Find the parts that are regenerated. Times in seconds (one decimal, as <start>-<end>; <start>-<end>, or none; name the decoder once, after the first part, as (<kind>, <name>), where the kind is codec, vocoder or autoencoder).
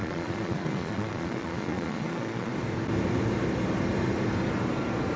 0.0-2.5 (vocoder, Vocos)